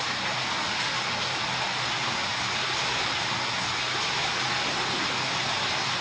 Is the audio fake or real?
real